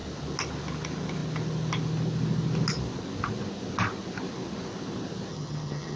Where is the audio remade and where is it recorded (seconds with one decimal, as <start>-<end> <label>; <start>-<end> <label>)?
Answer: 0.0-5.3 recorded; 5.3-6.0 remade